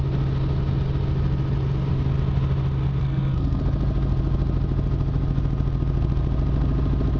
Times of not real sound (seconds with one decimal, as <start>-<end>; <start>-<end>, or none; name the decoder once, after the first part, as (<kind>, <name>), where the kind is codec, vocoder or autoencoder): 3.0-3.6 (codec, SNAC)